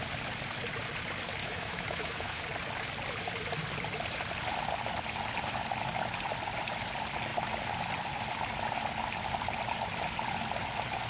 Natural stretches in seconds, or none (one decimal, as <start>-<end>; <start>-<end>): 0.0-1.4; 2.4-11.1